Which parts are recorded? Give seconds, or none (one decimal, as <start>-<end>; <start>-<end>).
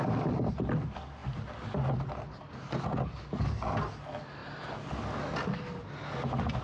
0.0-1.2; 2.5-6.6